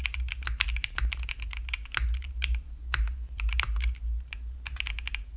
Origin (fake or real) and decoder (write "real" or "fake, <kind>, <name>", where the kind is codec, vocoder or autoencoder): fake, vocoder, BigVGAN v2